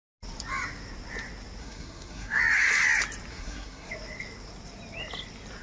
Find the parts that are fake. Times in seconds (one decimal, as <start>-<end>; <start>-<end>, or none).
1.6-2.4; 3.3-3.9